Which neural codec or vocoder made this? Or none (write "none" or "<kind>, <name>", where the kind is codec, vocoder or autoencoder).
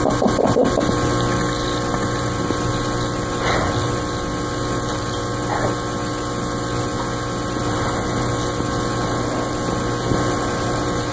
none